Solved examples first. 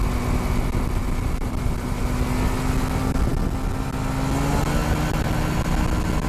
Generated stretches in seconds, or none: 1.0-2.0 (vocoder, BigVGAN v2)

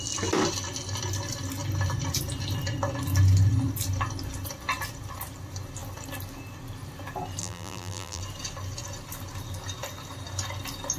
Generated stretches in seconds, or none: 7.4-8.2 (vocoder, BigVGAN v2)

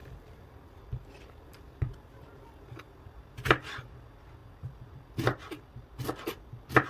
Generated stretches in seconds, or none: 0.0-2.8 (vocoder, BigVGAN v2); 4.4-6.9

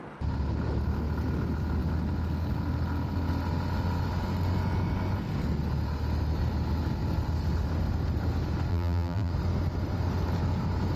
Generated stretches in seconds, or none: 8.7-9.3 (vocoder, BigVGAN v2)